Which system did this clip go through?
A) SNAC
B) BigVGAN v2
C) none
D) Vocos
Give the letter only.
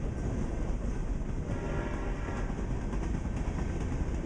C